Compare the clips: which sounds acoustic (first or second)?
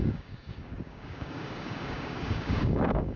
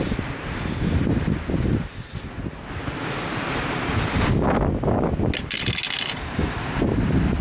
second